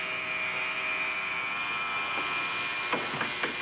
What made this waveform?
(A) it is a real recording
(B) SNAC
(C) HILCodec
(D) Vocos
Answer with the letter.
A